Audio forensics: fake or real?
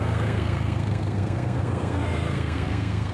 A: fake